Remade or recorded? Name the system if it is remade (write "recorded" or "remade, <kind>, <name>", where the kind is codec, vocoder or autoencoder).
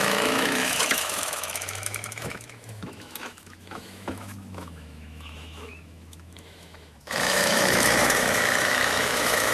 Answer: remade, autoencoder, DAC-VAE